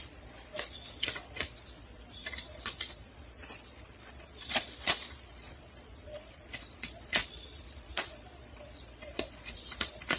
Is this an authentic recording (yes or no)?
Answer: no